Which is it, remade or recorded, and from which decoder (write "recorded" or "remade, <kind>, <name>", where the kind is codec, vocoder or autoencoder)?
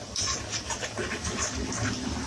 recorded